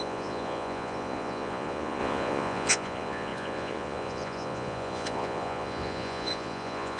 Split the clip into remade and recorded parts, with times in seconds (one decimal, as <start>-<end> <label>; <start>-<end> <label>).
0.0-7.0 remade